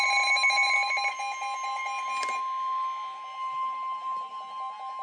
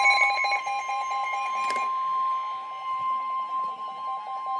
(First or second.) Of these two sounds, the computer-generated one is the second